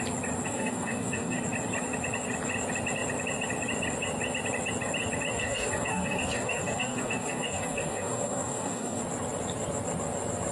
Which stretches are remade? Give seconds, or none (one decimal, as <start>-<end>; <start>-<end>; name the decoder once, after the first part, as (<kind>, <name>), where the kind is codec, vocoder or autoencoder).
0.4-1.4 (codec, DAC); 5.3-9.0